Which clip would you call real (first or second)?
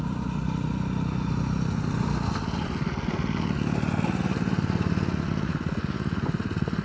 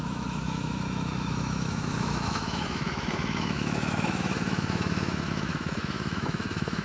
first